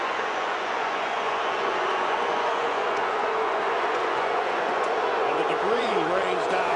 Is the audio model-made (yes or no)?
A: yes